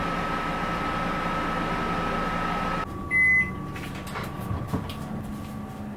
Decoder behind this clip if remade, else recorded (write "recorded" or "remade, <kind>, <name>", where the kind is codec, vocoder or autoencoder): recorded